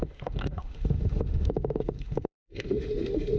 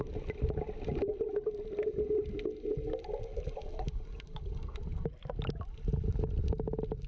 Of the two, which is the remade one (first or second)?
first